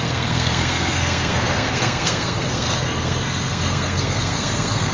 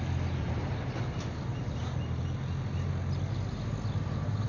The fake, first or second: first